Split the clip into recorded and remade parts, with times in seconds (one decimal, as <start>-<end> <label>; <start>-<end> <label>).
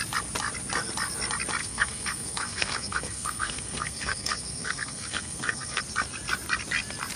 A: 0.0-1.6 recorded; 1.6-5.8 remade; 5.8-7.2 recorded